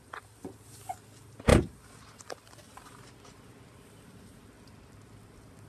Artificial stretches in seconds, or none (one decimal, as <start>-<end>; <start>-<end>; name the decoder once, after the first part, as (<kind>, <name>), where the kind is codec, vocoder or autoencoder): none